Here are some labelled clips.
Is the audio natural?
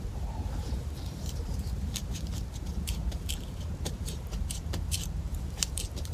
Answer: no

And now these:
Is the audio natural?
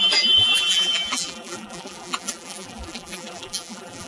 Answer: no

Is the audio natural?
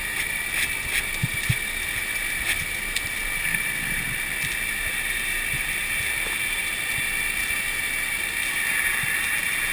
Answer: yes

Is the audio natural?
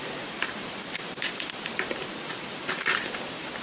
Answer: no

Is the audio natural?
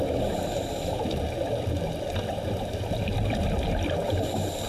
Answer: yes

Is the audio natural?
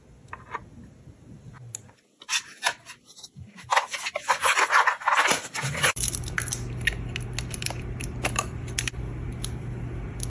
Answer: yes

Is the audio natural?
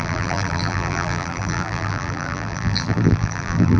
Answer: no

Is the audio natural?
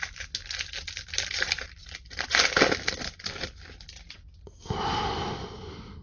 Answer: yes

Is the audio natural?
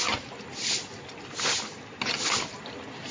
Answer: yes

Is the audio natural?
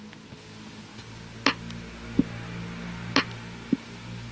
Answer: yes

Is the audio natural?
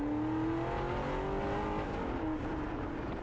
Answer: yes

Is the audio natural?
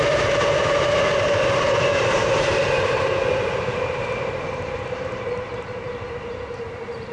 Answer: no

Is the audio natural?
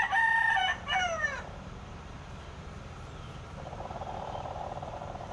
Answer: no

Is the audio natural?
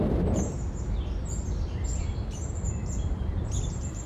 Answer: no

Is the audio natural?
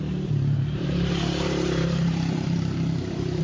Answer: no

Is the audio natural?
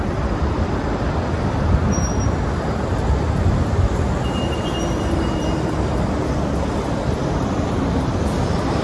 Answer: no